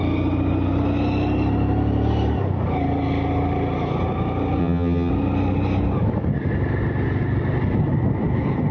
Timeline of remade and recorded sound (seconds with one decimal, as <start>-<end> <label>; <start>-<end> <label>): 0.0-4.6 recorded; 4.6-5.1 remade; 5.1-8.7 recorded